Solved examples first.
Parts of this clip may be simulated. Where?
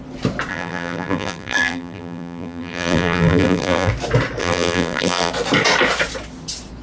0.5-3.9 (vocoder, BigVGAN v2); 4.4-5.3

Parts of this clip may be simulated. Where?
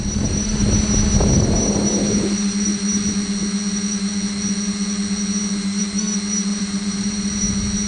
6.5-7.4 (vocoder, BigVGAN v2)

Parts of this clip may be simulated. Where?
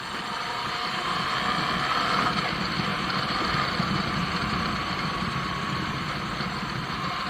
2.9-5.9 (vocoder, BigVGAN v2)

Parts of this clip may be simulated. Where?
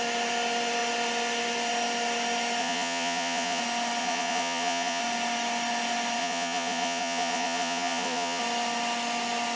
2.6-3.6 (vocoder, Vocos); 4.0-5.0; 6.2-8.4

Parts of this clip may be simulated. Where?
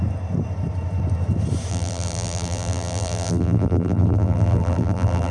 1.7-5.3 (vocoder, BigVGAN v2)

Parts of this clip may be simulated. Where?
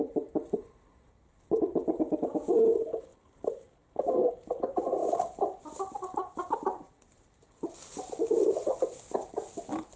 none